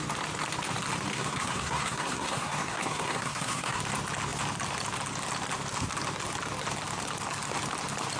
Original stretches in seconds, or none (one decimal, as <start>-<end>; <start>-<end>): 0.0-1.1; 3.8-8.2